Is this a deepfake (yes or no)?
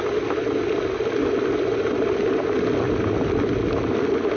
no